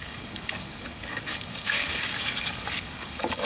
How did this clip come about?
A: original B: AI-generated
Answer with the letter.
B